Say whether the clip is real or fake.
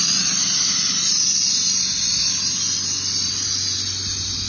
real